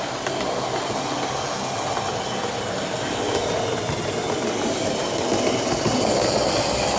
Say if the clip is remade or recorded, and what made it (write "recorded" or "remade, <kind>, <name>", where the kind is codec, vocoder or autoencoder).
recorded